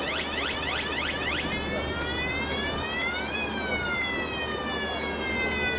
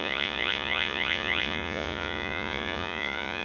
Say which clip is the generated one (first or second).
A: second